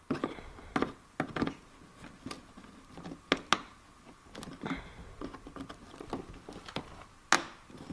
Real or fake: real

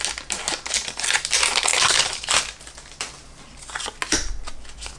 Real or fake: real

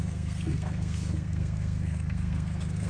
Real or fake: fake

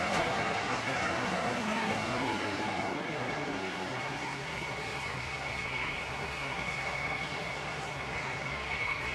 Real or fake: fake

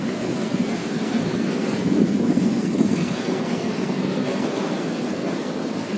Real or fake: fake